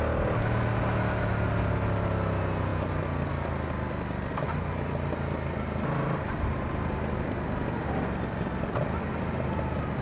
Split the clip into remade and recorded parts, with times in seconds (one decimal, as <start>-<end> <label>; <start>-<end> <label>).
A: 0.0-10.0 recorded